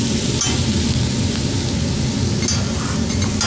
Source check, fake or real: real